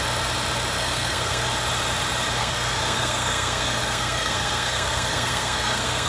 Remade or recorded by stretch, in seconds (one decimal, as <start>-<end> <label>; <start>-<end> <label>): 0.0-0.8 recorded; 0.8-1.4 remade; 1.4-2.4 recorded; 2.4-6.1 remade